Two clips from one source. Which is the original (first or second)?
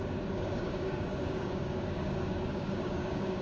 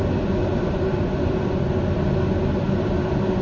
second